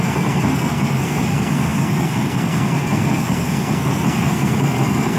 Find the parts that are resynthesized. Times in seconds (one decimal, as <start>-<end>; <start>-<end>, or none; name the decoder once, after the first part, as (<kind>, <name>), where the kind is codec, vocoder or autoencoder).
0.0-5.2 (codec, SNAC)